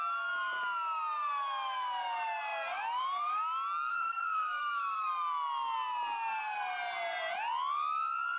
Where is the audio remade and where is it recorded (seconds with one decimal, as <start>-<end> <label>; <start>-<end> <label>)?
0.0-3.9 recorded; 3.9-5.1 remade; 5.1-8.4 recorded

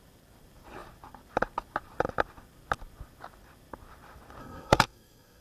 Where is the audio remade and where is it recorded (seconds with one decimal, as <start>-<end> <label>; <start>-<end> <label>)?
0.0-4.4 recorded; 4.4-5.4 remade

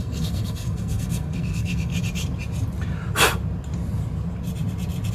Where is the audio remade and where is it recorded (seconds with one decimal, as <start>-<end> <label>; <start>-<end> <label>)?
0.0-1.9 remade; 1.9-5.1 recorded

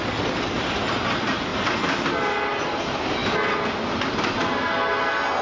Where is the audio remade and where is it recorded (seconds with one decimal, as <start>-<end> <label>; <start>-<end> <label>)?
0.0-5.4 recorded

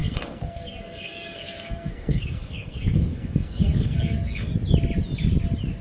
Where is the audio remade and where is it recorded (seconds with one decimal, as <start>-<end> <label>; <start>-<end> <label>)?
0.0-4.5 remade; 4.5-5.8 recorded

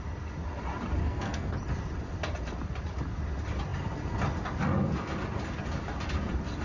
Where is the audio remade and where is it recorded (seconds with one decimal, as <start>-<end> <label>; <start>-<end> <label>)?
0.0-1.0 recorded; 1.0-1.5 remade; 1.5-6.6 recorded

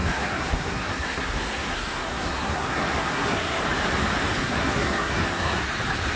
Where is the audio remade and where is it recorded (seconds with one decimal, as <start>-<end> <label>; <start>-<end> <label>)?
0.0-3.6 remade; 3.6-4.4 recorded; 4.4-5.6 remade; 5.6-6.2 recorded

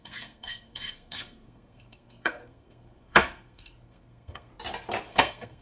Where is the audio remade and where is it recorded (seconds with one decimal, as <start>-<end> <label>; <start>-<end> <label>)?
0.0-4.5 remade; 4.5-5.1 recorded; 5.1-5.6 remade